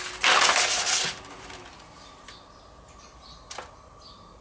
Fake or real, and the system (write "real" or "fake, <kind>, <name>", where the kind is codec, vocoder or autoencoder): real